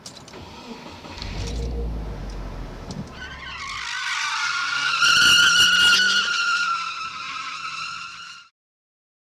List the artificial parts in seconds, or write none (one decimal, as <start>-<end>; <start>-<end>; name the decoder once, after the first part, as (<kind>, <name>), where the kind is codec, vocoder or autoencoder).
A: none